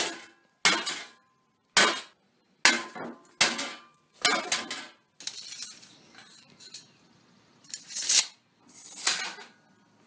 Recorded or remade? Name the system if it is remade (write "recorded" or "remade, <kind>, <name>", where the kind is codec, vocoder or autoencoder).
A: recorded